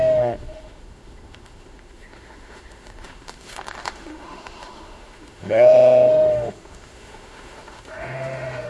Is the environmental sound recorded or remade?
remade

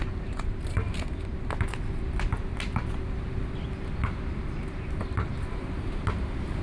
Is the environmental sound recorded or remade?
recorded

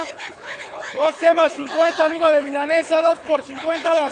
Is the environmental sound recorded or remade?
remade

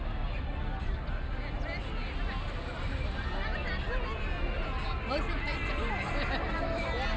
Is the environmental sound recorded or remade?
recorded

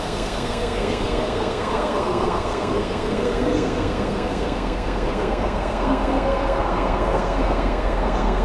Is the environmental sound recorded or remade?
remade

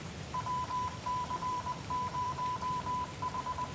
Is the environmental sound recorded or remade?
remade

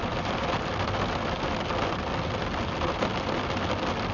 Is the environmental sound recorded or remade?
recorded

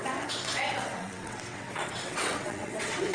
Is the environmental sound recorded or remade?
remade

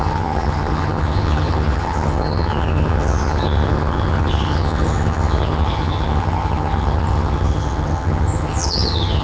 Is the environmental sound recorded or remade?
remade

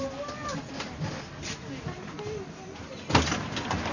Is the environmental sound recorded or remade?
recorded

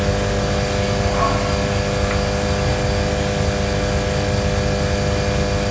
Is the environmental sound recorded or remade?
recorded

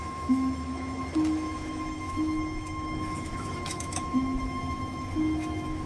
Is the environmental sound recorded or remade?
remade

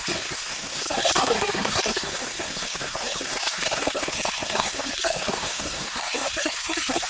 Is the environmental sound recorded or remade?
remade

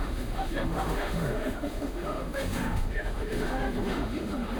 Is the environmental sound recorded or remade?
remade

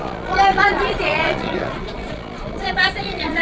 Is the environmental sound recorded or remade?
remade